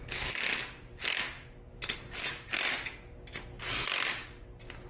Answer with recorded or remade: recorded